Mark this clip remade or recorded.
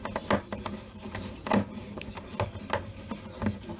recorded